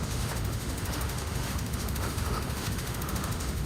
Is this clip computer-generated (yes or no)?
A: yes